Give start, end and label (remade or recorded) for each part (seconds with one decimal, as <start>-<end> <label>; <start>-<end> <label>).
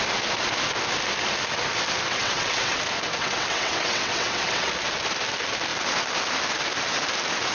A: 0.0-2.1 recorded; 2.1-2.8 remade; 2.8-3.2 recorded; 3.2-4.7 remade; 4.7-7.5 recorded